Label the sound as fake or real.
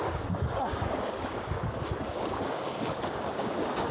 fake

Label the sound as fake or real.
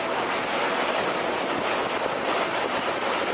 real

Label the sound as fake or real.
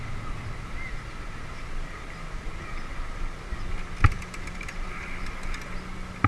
real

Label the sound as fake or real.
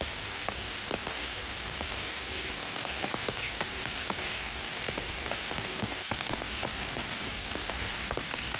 fake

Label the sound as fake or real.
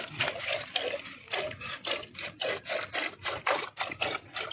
real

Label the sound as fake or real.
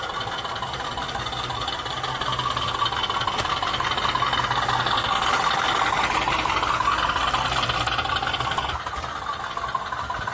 real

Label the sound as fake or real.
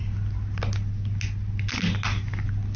real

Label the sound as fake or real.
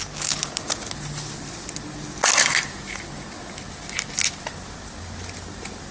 real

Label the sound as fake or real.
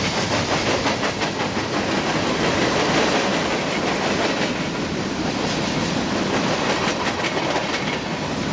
real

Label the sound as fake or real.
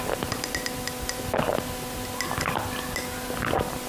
real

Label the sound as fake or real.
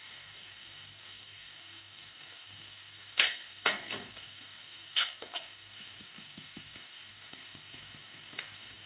fake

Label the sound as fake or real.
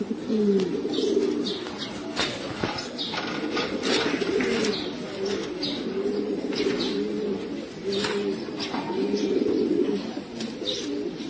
real